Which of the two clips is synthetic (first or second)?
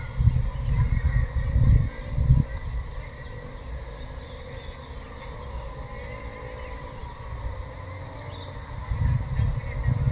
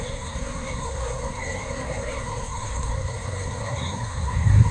second